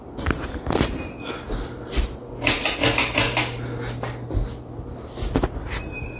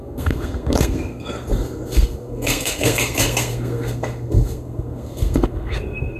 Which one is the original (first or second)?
first